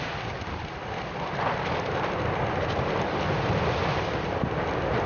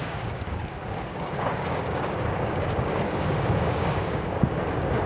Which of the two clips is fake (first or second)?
second